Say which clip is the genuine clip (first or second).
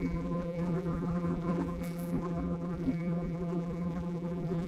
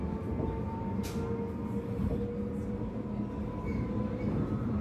second